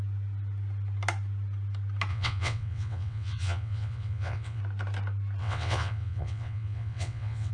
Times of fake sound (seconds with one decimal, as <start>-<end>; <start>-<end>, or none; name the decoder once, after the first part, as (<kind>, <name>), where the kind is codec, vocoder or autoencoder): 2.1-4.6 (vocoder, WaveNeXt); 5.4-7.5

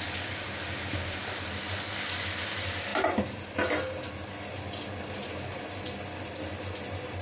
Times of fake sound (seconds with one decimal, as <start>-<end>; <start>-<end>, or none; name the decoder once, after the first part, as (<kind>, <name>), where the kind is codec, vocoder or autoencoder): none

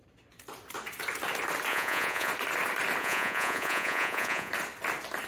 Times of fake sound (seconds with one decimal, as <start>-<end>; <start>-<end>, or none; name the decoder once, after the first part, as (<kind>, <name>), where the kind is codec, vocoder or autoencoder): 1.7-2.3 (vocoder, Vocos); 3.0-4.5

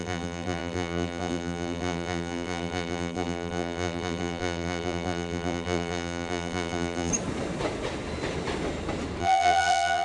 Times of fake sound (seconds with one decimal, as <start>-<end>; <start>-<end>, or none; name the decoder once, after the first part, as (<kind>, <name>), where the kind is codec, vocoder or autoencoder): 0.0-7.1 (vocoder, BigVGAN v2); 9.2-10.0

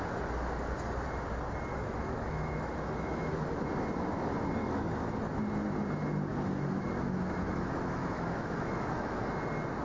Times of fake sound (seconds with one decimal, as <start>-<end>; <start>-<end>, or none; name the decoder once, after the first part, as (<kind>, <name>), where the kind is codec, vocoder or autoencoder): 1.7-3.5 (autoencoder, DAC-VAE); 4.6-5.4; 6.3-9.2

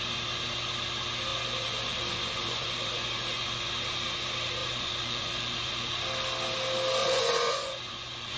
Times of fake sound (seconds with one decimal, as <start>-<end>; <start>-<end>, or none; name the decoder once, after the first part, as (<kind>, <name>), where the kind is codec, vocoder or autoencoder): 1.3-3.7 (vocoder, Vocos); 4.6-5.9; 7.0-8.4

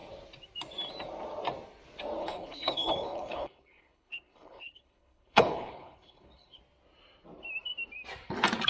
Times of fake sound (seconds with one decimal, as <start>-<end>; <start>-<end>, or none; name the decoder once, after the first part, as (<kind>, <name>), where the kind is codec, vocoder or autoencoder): 2.2-6.6 (codec, HILCodec)

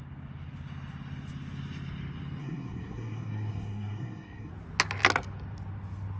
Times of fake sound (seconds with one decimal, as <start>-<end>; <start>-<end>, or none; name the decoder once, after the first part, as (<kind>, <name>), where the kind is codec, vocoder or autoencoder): 2.4-4.5 (codec, SNAC)